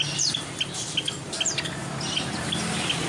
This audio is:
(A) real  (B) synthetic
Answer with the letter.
B